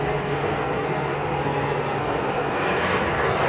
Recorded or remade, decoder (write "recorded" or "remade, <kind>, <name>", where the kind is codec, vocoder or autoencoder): remade, codec, SNAC